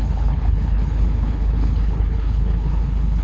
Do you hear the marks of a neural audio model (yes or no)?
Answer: yes